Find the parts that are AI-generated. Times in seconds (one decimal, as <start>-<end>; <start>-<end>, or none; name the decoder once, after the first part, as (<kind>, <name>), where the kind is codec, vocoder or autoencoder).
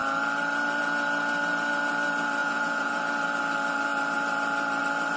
2.4-3.0 (vocoder, Vocos)